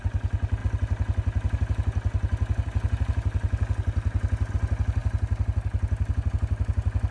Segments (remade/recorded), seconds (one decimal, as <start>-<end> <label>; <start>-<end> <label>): 0.0-7.1 recorded